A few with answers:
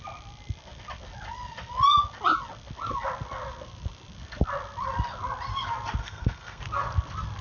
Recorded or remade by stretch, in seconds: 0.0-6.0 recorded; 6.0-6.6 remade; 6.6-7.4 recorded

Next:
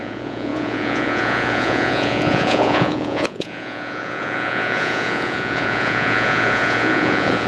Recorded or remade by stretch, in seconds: 0.0-7.5 remade